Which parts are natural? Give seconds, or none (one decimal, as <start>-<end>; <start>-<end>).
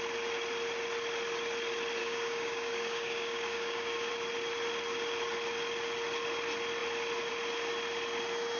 0.0-2.0; 4.1-8.6